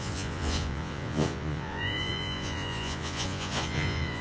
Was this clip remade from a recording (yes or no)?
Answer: yes